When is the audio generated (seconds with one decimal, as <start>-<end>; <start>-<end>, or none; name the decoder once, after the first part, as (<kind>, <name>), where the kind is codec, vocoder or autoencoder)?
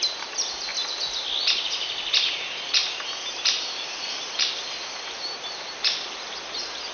0.0-0.7 (vocoder, BigVGAN v2); 2.1-6.9